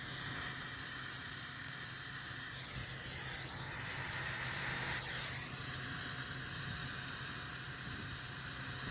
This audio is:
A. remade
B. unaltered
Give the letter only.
B